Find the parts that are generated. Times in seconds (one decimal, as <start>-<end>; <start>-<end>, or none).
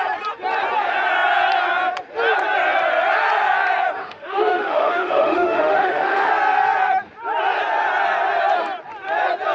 4.0-6.3